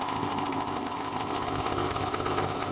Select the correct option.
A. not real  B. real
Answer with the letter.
A